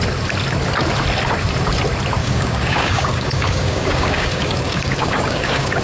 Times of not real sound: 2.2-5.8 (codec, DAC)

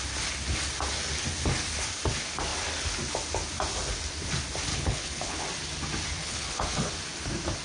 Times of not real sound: 4.7-5.4 (codec, HILCodec); 6.2-6.9

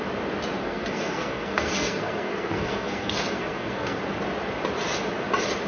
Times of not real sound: 0.6-4.0 (codec, SNAC)

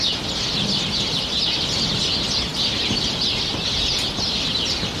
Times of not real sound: none

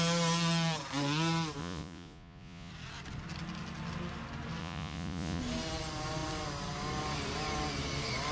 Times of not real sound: 1.6-2.7 (vocoder, Vocos); 4.6-5.4

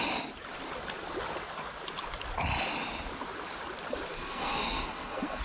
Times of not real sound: 4.1-5.4 (codec, SNAC)

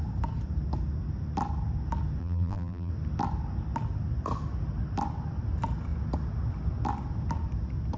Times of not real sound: 2.2-2.9 (vocoder, BigVGAN v2)